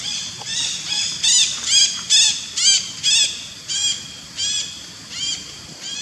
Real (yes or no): yes